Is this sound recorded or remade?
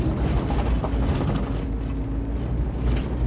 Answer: recorded